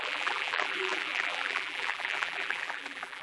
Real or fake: fake